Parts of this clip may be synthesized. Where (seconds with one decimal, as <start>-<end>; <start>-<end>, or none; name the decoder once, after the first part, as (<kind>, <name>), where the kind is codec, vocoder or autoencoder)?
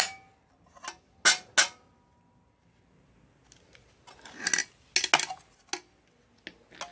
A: none